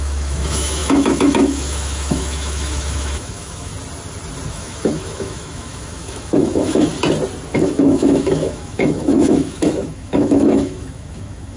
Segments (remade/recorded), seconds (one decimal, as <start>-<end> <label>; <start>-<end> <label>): 0.0-3.7 remade; 3.7-4.5 recorded; 4.5-6.9 remade; 6.9-7.5 recorded; 7.5-11.6 remade

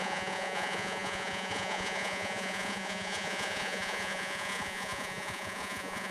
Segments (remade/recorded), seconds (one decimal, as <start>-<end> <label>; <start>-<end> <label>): 0.0-6.1 remade

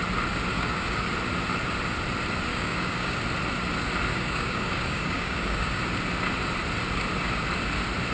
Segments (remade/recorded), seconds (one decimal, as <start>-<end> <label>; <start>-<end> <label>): 0.0-0.5 recorded; 0.5-1.1 remade; 1.1-2.5 recorded; 2.5-3.2 remade; 3.2-4.1 recorded; 4.1-5.8 remade; 5.8-8.1 recorded

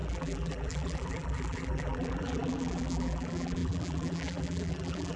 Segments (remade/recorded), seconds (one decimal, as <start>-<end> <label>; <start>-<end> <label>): 0.0-5.2 remade

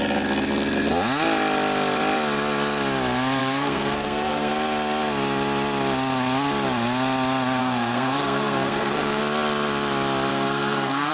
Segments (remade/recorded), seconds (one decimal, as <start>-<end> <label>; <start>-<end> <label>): 0.0-3.4 recorded; 3.4-4.5 remade; 4.5-7.6 recorded; 7.6-9.2 remade; 9.2-10.3 recorded; 10.3-11.1 remade

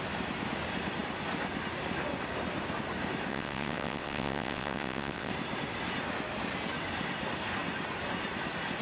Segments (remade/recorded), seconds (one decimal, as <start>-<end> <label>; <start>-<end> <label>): 0.0-3.3 recorded; 3.3-5.3 remade; 5.3-8.8 recorded

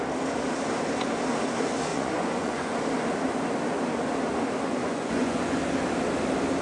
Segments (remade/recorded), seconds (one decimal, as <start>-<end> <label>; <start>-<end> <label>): 0.0-1.9 recorded; 1.9-2.7 remade; 2.7-4.8 recorded; 4.8-5.6 remade; 5.6-6.6 recorded